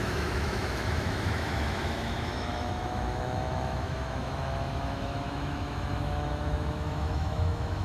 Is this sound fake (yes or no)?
yes